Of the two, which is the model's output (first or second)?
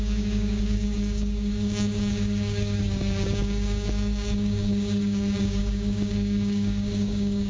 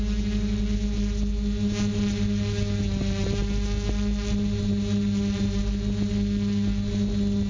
first